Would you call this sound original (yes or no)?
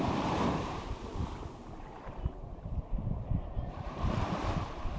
no